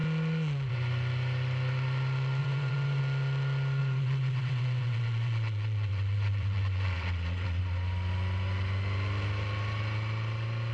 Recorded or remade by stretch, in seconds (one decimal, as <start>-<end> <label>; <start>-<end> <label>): 0.0-2.4 recorded; 2.4-3.0 remade; 3.0-3.8 recorded; 3.8-7.6 remade; 7.6-10.7 recorded